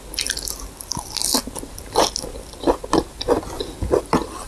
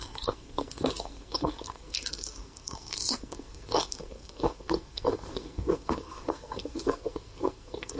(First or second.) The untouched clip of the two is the first